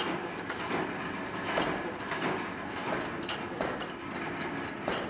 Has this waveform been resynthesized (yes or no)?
no